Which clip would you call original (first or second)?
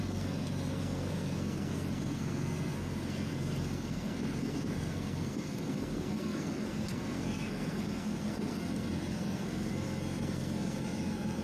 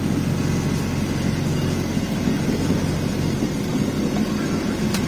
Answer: second